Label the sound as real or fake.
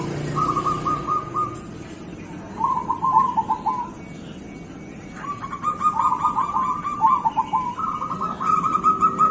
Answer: real